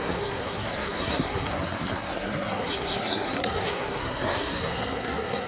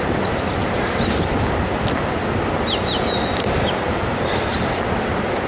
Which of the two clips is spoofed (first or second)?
first